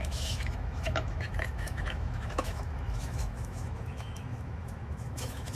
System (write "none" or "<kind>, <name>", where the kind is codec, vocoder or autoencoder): autoencoder, DAC-VAE